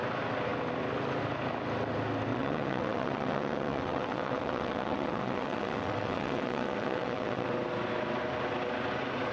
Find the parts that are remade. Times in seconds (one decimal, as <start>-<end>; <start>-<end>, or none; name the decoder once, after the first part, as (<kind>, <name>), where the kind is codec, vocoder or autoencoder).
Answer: 2.3-7.5 (vocoder, WaveNeXt)

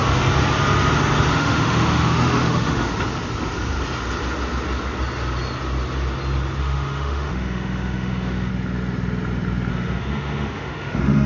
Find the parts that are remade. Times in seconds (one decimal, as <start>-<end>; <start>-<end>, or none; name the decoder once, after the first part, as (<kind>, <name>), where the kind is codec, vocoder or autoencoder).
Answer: 1.4-2.9 (autoencoder, DAC-VAE); 6.6-8.5; 9.7-11.3

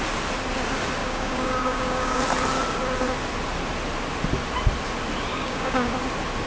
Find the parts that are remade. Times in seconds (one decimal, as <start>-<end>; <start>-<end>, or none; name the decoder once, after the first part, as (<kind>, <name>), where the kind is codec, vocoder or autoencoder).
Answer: 1.0-2.2 (codec, DAC); 5.3-5.9